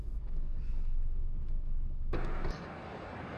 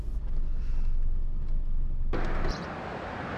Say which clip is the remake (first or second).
first